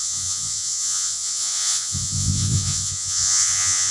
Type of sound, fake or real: fake